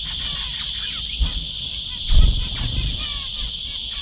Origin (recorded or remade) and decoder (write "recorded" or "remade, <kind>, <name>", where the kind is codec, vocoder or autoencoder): recorded